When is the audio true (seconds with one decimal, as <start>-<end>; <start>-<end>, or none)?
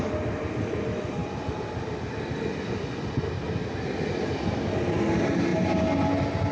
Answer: 0.0-6.5